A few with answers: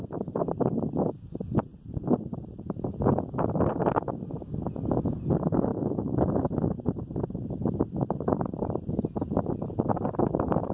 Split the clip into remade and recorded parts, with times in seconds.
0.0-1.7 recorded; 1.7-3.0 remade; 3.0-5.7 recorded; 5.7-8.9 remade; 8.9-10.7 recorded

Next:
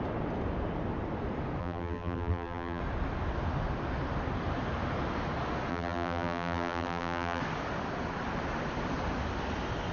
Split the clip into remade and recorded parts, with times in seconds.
0.0-1.6 recorded; 1.6-2.8 remade; 2.8-5.7 recorded; 5.7-7.4 remade; 7.4-9.9 recorded

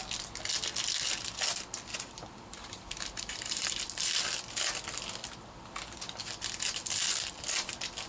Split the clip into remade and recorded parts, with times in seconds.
0.0-1.9 recorded; 1.9-3.8 remade; 3.8-8.1 recorded

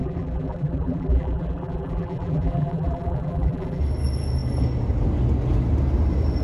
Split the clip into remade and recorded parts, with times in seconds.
0.0-3.8 remade; 3.8-6.4 recorded

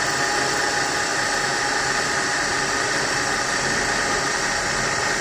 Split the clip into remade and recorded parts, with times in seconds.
0.0-1.1 recorded; 1.1-4.2 remade; 4.2-5.2 recorded